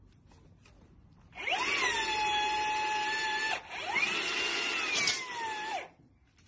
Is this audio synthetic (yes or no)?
no